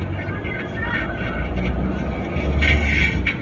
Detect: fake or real real